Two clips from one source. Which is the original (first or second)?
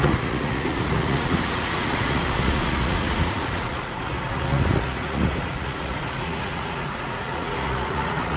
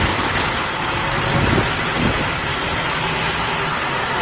second